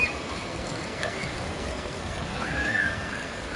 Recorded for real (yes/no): no